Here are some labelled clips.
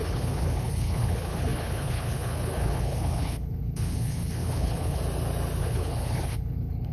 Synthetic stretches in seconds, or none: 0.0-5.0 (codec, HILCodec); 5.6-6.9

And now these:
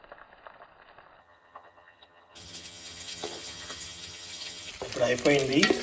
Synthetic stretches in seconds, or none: 1.2-4.7 (vocoder, HiFi-GAN)

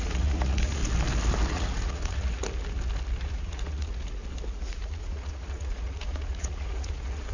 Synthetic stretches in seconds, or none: 0.0-0.8 (vocoder, Vocos); 1.5-2.4; 3.2-4.2; 4.7-7.3